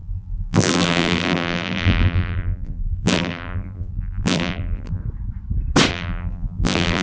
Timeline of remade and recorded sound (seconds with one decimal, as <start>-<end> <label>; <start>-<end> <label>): 0.0-5.0 remade; 5.0-5.9 recorded; 5.9-7.0 remade